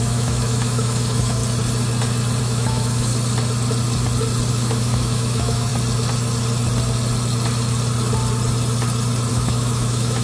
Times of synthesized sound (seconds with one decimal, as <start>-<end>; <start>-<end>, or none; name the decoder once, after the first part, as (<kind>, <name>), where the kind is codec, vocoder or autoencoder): 0.0-1.4 (autoencoder, DAC-VAE); 2.4-3.1; 4.5-5.7; 9.3-10.2